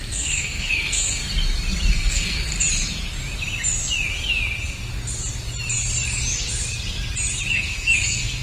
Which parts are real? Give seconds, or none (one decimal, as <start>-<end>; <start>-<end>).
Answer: 1.2-1.9; 2.5-7.5